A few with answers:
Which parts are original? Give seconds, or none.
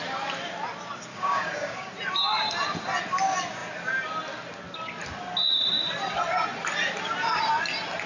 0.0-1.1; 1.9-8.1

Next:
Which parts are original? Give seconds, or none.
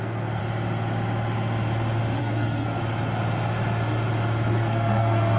0.4-2.2; 2.8-4.5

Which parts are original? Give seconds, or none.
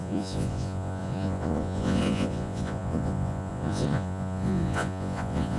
none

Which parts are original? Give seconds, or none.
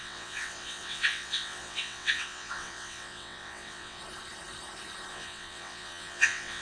4.0-5.1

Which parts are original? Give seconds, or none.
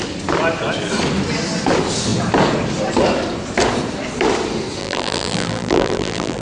0.0-4.8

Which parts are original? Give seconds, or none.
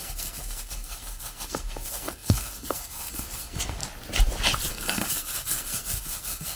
3.8-4.7